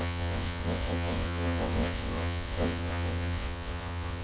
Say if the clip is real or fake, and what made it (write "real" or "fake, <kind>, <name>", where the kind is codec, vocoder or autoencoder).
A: fake, vocoder, WaveNeXt